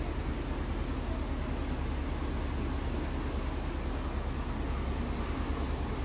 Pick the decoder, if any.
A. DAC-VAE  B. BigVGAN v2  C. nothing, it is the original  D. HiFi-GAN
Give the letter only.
C